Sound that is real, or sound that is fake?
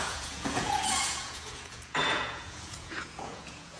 fake